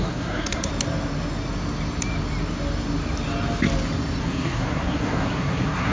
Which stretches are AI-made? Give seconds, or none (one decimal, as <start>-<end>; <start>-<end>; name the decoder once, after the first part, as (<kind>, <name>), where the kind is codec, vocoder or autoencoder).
0.0-0.7 (codec, SNAC); 4.2-5.9